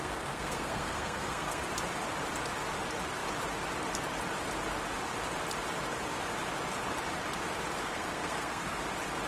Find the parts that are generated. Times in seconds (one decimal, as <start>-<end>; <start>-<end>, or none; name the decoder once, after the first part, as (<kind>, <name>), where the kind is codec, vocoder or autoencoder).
0.0-1.6 (codec, SNAC); 7.8-8.8